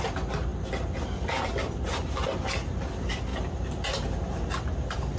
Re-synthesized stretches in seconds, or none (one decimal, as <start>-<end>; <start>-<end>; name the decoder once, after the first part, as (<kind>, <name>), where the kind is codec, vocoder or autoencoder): 3.3-4.5 (vocoder, BigVGAN v2)